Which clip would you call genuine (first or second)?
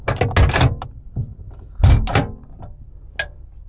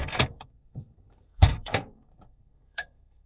first